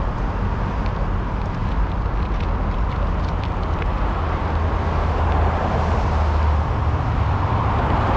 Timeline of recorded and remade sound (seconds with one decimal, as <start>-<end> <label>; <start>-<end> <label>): 0.0-8.2 recorded